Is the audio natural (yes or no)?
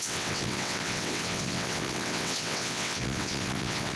no